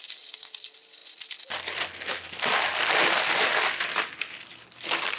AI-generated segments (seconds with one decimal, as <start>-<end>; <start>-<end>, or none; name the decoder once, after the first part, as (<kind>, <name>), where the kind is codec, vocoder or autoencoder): none